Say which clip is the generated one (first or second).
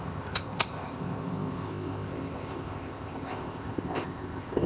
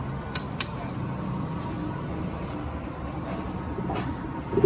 first